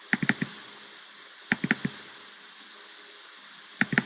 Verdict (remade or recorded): recorded